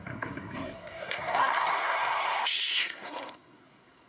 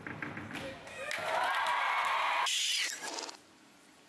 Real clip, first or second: second